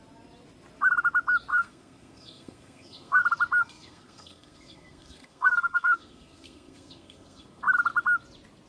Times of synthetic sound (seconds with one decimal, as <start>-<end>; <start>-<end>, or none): 1.5-3.2; 3.6-7.6